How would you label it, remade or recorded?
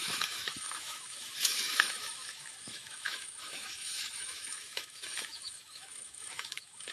remade